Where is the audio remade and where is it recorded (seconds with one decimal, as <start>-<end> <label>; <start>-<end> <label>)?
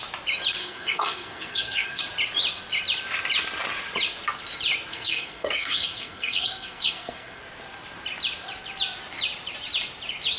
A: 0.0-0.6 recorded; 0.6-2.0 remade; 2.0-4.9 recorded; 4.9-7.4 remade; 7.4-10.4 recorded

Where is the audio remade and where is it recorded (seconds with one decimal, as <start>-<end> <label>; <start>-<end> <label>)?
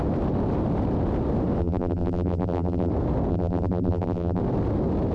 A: 0.0-1.6 recorded; 1.6-2.9 remade; 2.9-3.3 recorded; 3.3-4.4 remade; 4.4-5.1 recorded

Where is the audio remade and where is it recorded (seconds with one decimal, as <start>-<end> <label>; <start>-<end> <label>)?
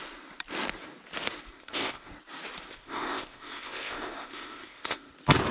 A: 0.0-1.5 recorded; 1.5-2.1 remade; 2.1-2.7 recorded; 2.7-5.1 remade; 5.1-5.5 recorded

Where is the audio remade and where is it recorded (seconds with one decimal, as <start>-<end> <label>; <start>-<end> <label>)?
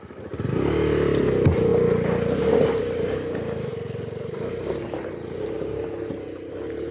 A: 0.0-6.9 recorded